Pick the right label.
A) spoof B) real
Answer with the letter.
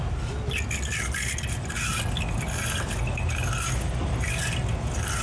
B